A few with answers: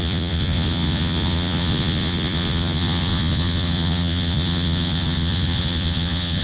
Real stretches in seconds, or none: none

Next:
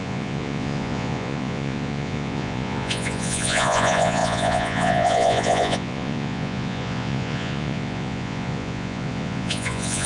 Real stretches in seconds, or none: none